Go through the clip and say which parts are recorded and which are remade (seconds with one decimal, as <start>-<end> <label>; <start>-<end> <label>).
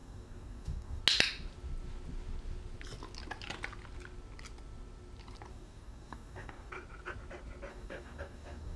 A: 0.0-1.0 remade; 1.0-5.5 recorded; 5.5-6.7 remade; 6.7-7.7 recorded; 7.7-8.8 remade